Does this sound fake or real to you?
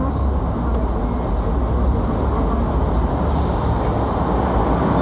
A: real